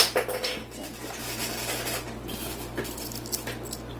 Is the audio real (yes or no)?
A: yes